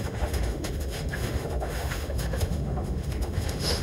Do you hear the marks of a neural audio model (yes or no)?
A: yes